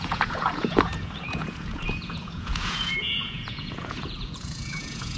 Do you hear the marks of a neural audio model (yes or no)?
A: yes